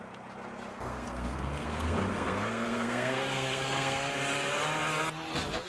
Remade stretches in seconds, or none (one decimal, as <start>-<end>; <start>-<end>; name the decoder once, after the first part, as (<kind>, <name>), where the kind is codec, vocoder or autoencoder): 0.7-4.1 (codec, SNAC)